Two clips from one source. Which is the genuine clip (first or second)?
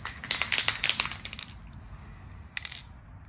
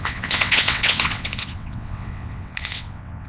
first